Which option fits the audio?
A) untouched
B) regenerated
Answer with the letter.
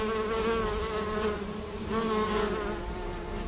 A